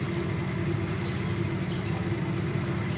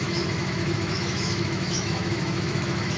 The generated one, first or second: second